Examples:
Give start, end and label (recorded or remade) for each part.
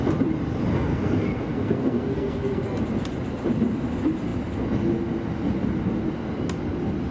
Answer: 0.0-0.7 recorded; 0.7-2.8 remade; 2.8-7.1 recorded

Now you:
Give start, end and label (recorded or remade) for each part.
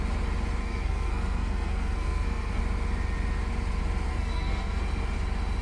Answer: 0.0-0.6 recorded; 0.6-2.6 remade; 2.6-4.1 recorded; 4.1-4.8 remade; 4.8-5.6 recorded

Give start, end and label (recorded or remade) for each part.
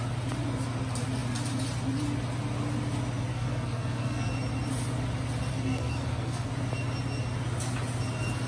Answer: 0.0-3.3 recorded; 3.3-4.3 remade; 4.3-5.5 recorded; 5.5-6.5 remade; 6.5-8.5 recorded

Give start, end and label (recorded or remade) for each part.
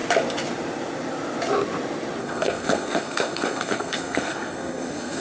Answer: 0.0-2.2 recorded; 2.2-5.2 remade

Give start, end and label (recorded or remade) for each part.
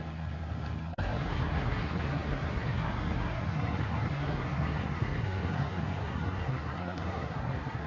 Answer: 0.0-7.9 remade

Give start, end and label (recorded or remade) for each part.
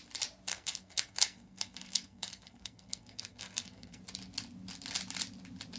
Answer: 0.0-0.5 recorded; 0.5-4.0 remade; 4.0-5.8 recorded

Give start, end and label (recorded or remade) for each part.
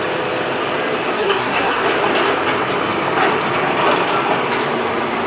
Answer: 0.0-1.2 recorded; 1.2-1.8 remade; 1.8-5.3 recorded